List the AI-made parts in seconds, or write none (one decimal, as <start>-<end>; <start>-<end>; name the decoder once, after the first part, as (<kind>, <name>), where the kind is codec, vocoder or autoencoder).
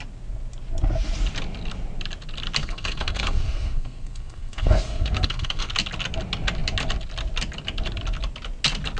2.6-5.7 (codec, SNAC)